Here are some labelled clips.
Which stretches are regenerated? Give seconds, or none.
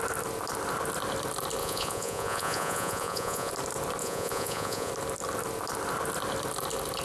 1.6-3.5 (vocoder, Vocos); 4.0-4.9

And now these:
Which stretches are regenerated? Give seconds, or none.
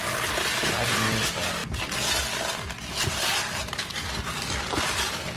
none